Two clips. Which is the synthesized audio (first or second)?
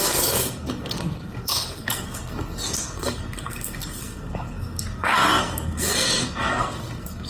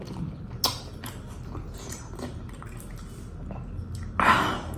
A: first